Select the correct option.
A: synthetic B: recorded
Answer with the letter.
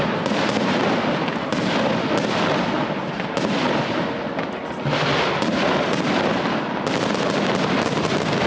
B